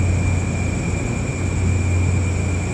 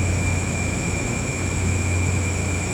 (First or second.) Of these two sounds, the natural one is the first